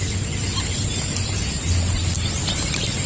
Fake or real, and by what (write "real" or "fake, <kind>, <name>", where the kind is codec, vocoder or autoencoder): real